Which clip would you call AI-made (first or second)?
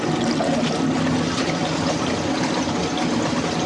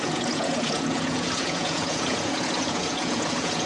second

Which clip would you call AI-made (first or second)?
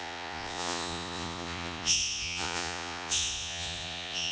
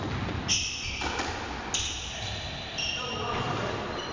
first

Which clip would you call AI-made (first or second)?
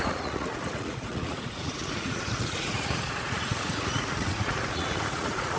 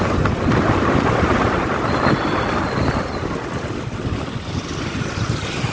first